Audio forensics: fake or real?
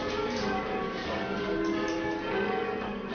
fake